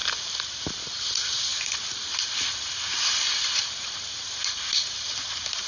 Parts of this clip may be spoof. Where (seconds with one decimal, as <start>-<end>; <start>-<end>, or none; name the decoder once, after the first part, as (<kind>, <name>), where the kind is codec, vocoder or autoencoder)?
1.5-4.9 (vocoder, BigVGAN v2)